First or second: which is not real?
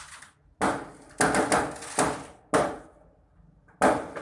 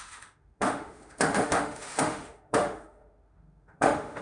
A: second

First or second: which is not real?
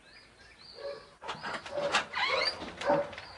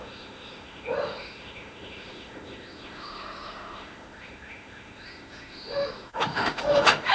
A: second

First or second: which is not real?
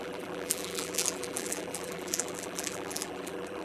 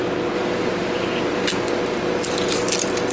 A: first